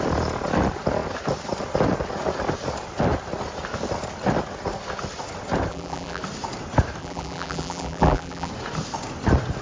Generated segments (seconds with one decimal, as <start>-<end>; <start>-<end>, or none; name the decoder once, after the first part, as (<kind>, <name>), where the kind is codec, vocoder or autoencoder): 5.7-6.2 (vocoder, BigVGAN v2); 7.0-8.5